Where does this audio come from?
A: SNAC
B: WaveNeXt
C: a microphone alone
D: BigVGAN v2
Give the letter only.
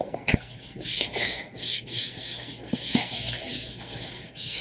A